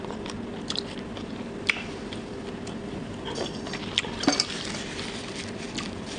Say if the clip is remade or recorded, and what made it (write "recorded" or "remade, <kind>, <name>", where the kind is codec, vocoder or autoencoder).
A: remade, vocoder, BigVGAN v2